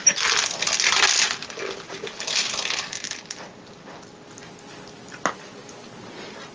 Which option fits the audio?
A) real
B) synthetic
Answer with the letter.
A